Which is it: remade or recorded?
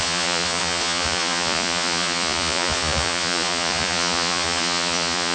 remade